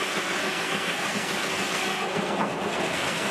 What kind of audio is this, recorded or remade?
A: remade